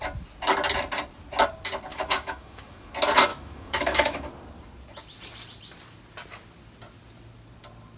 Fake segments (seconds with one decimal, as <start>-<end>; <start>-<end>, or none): 1.9-2.9; 3.3-4.3